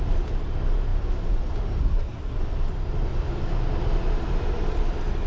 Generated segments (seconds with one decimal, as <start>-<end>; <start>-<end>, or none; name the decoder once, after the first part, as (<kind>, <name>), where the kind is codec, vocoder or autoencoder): 1.8-2.4 (codec, SNAC)